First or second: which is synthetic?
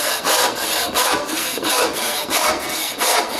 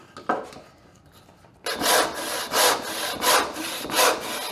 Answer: first